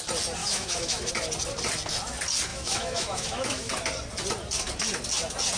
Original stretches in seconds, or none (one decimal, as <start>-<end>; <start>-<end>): 0.0-0.4; 1.1-2.5; 3.7-5.6